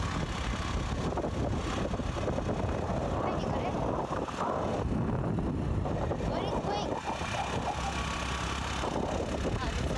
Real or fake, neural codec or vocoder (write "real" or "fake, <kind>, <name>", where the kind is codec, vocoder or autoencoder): real